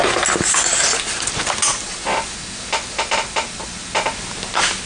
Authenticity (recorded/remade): recorded